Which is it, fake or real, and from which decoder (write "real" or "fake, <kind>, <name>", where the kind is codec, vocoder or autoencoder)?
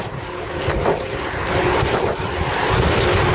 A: real